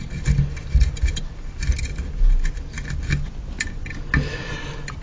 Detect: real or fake real